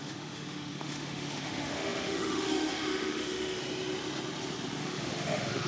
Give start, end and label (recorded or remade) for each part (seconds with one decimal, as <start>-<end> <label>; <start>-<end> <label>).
0.0-3.6 remade; 3.6-4.8 recorded; 4.8-5.7 remade